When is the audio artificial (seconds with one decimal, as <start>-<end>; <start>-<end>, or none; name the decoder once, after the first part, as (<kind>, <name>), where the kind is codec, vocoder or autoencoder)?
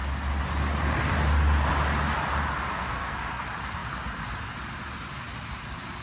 2.7-3.4 (codec, SNAC)